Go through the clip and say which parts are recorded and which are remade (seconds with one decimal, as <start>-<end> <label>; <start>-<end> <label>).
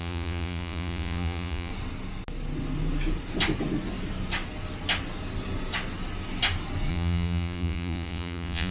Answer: 0.0-1.7 remade; 1.7-6.9 recorded; 6.9-8.7 remade